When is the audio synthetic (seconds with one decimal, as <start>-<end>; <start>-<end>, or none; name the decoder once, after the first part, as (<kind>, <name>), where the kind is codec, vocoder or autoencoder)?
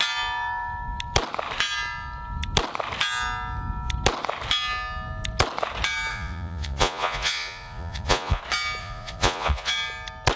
6.1-8.4 (vocoder, Vocos); 8.8-9.7